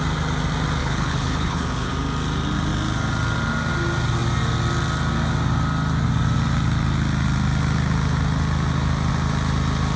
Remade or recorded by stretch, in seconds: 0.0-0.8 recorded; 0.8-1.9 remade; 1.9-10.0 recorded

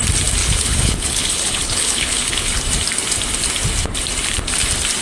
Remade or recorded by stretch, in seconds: 0.0-0.4 recorded; 0.4-2.6 remade; 2.6-5.0 recorded

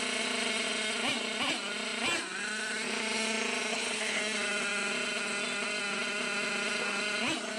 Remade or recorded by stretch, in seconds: 0.0-3.7 recorded; 3.7-4.2 remade; 4.2-7.6 recorded

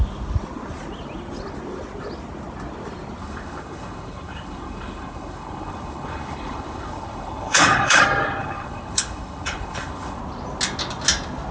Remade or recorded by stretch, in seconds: 0.0-3.2 recorded; 3.2-8.0 remade; 8.0-8.4 recorded; 8.4-10.2 remade; 10.2-11.5 recorded

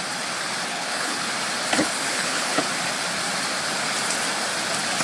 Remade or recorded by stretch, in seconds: 0.0-0.7 recorded; 0.7-1.3 remade; 1.3-2.0 recorded; 2.0-2.6 remade; 2.6-5.0 recorded

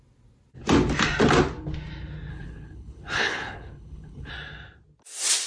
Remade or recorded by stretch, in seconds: 0.0-2.3 recorded; 2.3-4.3 remade; 4.3-5.5 recorded